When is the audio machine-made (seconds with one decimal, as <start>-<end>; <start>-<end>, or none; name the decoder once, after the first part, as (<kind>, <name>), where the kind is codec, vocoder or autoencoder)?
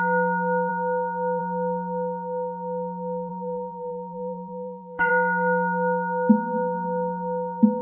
3.3-5.1 (vocoder, BigVGAN v2)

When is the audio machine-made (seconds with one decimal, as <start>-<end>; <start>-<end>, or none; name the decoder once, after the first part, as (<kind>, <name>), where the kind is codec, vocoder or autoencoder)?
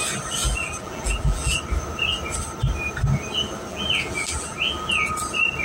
0.4-1.6 (vocoder, BigVGAN v2); 3.7-4.9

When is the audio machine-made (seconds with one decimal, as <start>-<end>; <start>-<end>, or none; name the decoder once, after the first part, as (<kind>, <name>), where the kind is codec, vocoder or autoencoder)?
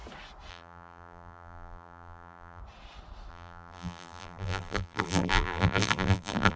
0.5-2.6 (vocoder, BigVGAN v2); 3.3-6.6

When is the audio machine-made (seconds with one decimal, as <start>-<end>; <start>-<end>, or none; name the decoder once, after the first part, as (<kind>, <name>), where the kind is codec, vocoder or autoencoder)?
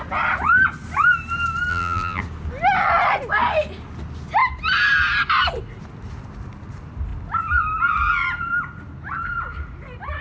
1.7-2.2 (vocoder, BigVGAN v2)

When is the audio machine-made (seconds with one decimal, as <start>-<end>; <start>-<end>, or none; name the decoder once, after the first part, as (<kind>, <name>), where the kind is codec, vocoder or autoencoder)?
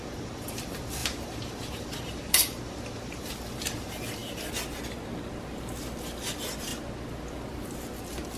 1.0-3.3 (vocoder, BigVGAN v2)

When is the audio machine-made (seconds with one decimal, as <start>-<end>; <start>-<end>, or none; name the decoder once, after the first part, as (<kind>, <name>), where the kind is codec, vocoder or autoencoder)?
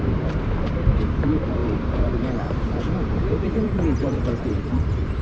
0.0-5.2 (vocoder, BigVGAN v2)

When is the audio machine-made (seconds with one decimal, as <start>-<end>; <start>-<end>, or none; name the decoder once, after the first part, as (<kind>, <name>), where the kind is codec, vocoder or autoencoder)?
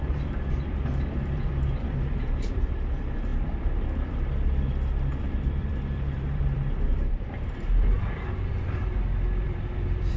0.0-10.2 (vocoder, BigVGAN v2)